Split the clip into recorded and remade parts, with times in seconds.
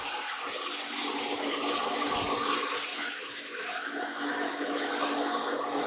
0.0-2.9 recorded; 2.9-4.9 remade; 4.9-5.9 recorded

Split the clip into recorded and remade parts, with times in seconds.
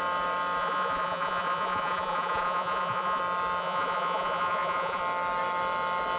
0.0-0.6 recorded; 0.6-3.2 remade; 3.2-3.6 recorded; 3.6-5.0 remade; 5.0-6.2 recorded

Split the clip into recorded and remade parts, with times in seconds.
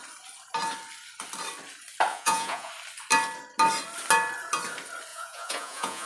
0.0-2.1 recorded; 2.1-2.7 remade; 2.7-5.1 recorded; 5.1-6.1 remade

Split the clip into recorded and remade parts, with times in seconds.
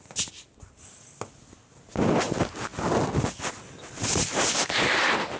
0.0-5.4 recorded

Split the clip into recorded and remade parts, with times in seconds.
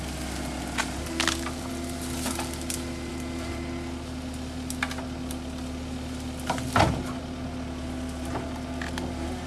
0.0-9.5 recorded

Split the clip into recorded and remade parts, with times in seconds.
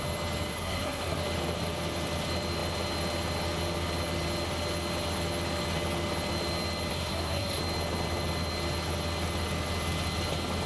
0.0-0.5 recorded; 0.5-1.2 remade; 1.2-6.9 recorded; 6.9-7.6 remade; 7.6-10.7 recorded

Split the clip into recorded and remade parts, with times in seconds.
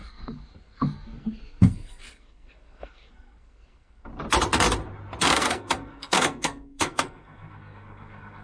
0.0-4.1 remade; 4.1-5.2 recorded; 5.2-8.4 remade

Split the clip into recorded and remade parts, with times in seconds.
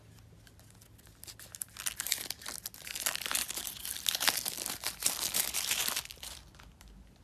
0.0-7.2 recorded